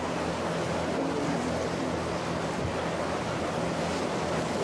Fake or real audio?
real